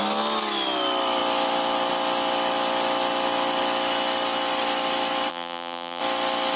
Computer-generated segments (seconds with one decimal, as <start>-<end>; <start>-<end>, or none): 5.3-6.0